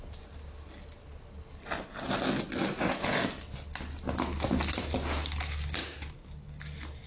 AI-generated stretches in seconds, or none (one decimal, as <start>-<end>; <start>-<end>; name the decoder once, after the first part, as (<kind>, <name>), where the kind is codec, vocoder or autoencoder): none